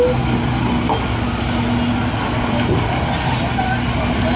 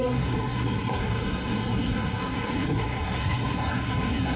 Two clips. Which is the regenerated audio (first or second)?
second